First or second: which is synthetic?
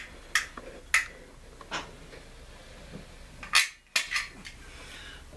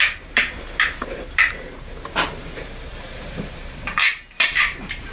second